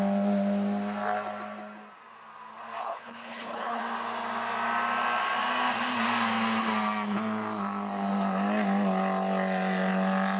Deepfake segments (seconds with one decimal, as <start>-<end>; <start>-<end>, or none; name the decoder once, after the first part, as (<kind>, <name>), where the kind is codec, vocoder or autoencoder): 2.8-3.8 (codec, HILCodec)

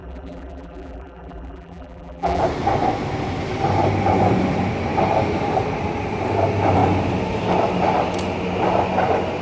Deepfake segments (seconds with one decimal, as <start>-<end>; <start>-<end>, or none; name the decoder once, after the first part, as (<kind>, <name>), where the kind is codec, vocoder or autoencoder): 0.0-2.4 (vocoder, BigVGAN v2)

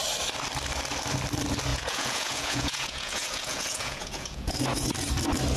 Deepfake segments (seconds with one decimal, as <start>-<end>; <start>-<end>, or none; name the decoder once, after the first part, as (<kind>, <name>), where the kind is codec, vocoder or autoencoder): 1.7-4.5 (vocoder, Vocos)

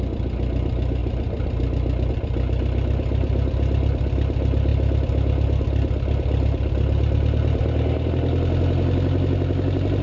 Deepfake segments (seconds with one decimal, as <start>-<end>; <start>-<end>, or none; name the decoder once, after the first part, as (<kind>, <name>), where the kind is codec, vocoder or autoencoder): none